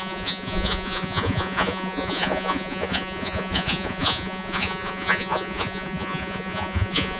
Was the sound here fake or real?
fake